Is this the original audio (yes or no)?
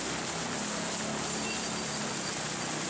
yes